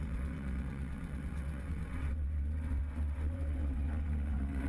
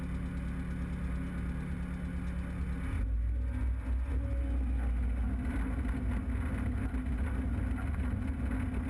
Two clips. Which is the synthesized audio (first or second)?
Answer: first